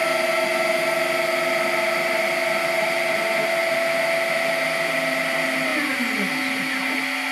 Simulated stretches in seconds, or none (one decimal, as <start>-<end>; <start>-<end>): 5.7-6.3